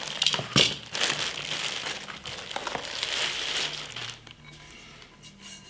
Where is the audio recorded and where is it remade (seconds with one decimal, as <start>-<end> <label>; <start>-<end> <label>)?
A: 0.0-5.7 recorded